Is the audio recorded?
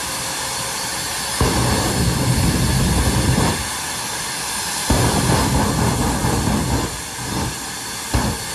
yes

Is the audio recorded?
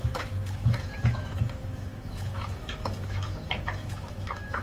no